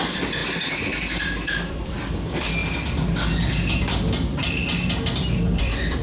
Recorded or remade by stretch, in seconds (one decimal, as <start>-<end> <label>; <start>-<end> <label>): 0.0-2.6 remade; 2.6-5.6 recorded; 5.6-6.0 remade